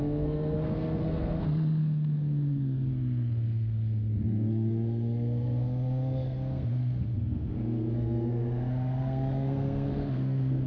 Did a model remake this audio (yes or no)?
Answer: yes